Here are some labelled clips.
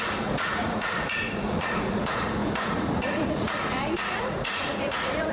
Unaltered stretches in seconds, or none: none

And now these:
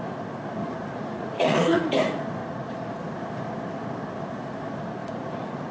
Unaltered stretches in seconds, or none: 0.0-0.6; 1.9-2.4; 3.2-5.0

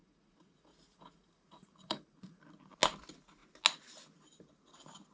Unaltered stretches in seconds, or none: 2.4-5.1

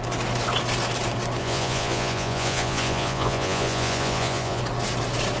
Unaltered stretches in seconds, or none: 0.0-1.4; 4.6-5.4

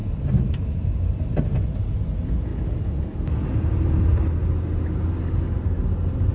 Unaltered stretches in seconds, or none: 0.0-6.3